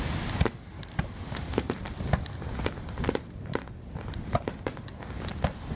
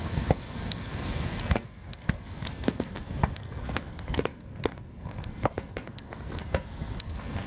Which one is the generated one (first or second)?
second